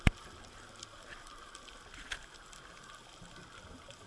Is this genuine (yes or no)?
yes